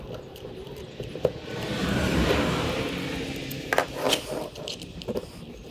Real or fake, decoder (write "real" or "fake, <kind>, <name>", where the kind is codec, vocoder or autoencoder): real